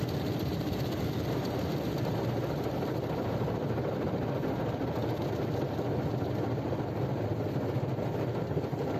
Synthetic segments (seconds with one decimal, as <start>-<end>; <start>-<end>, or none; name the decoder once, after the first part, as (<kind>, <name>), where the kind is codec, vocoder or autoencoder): none